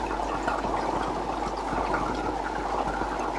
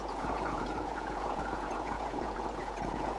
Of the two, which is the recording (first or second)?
first